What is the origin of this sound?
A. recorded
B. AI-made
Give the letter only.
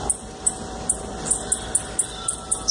B